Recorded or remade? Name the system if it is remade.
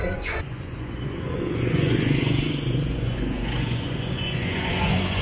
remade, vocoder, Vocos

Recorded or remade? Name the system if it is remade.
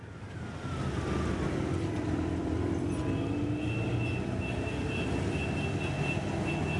recorded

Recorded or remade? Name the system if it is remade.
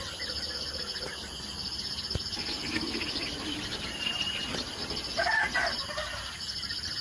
recorded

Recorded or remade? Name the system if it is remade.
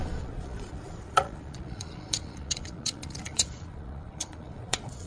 remade, vocoder, Vocos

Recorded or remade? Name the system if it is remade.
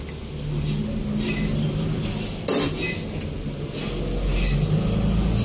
recorded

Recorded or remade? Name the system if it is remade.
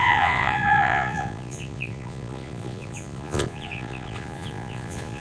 remade, vocoder, Vocos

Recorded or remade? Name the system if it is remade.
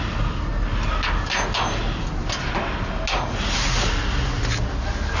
recorded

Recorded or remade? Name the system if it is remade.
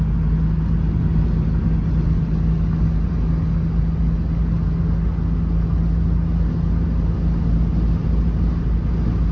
recorded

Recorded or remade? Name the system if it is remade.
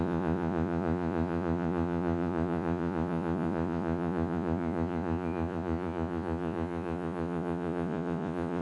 remade, vocoder, Vocos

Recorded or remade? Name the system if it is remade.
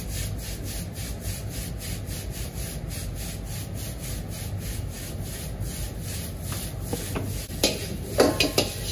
recorded